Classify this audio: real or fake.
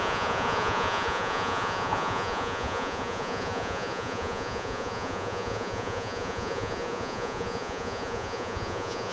fake